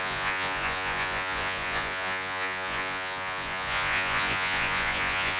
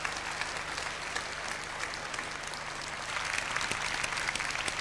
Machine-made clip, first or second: first